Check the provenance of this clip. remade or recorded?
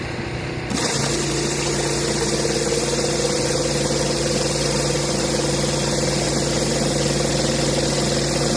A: recorded